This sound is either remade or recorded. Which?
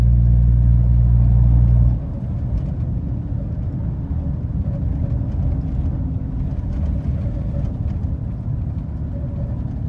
recorded